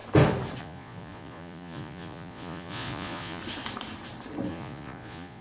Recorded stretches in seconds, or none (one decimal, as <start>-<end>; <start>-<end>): 0.0-0.6; 3.4-4.5